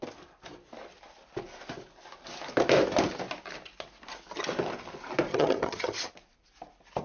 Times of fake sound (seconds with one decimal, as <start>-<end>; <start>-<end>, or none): 5.3-6.1